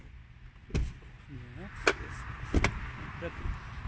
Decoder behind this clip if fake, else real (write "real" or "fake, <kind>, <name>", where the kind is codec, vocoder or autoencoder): real